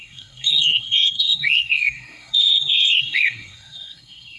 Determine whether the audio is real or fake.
fake